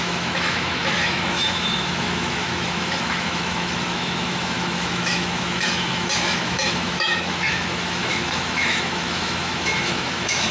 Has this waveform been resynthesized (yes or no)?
yes